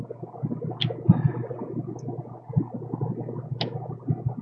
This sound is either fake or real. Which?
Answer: real